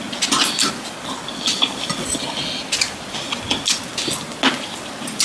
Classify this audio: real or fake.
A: real